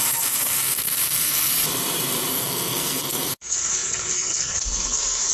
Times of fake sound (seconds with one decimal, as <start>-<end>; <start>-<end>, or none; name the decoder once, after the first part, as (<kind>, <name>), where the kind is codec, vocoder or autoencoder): 0.0-1.5 (codec, SNAC); 2.3-5.3